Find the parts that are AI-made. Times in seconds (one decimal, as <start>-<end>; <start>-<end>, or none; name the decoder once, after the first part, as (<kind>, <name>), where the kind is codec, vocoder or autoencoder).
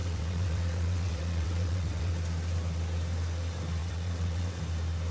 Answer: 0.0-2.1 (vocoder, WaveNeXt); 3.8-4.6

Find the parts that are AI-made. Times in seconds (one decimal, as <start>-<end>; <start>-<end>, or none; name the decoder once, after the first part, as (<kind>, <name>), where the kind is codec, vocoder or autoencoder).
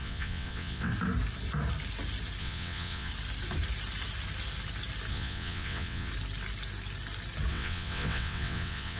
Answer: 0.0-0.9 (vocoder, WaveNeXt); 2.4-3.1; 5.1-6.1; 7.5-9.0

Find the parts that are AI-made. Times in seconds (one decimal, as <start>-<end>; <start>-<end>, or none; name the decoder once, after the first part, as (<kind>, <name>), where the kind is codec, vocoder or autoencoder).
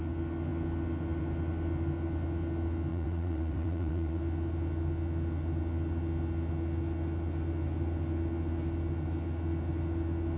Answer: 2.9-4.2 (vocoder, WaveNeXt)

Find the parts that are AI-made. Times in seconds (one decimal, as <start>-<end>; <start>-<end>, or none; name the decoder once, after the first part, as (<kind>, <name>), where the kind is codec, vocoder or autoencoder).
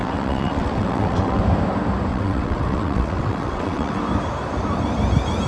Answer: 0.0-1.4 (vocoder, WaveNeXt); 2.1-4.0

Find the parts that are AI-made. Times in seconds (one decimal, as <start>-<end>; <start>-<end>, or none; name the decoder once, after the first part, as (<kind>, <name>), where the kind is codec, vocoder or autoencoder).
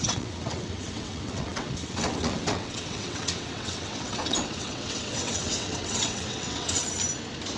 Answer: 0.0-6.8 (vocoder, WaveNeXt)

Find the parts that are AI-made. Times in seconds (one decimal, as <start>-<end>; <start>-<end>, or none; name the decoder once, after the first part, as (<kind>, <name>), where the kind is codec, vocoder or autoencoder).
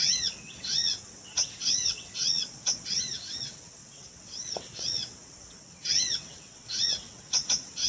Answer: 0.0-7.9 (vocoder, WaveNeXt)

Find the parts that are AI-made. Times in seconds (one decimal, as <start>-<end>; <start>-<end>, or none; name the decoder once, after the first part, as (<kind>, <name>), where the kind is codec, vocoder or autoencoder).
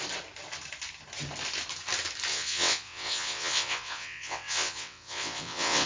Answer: 2.3-5.9 (vocoder, WaveNeXt)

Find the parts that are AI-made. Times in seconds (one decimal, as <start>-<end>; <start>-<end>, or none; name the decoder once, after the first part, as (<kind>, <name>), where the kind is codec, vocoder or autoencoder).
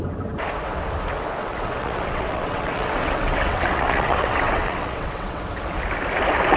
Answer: 1.4-5.4 (vocoder, WaveNeXt)